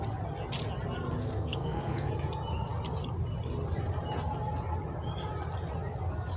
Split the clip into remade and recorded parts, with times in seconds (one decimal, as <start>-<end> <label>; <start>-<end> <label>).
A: 0.0-1.2 recorded; 1.2-2.1 remade; 2.1-6.4 recorded